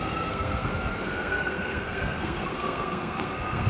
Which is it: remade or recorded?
remade